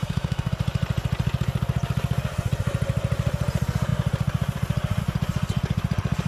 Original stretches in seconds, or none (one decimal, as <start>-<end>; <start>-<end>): 0.5-6.3